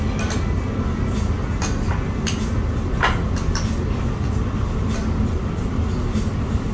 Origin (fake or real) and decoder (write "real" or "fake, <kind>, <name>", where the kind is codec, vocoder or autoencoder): real